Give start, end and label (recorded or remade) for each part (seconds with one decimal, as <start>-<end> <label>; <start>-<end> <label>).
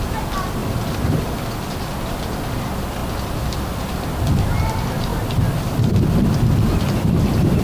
0.0-7.6 recorded